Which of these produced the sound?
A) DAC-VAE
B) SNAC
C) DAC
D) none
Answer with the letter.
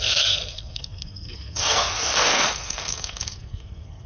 B